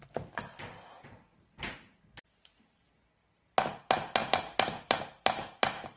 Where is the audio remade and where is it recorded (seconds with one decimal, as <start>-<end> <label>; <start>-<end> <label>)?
0.0-6.0 recorded